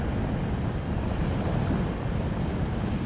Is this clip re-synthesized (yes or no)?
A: no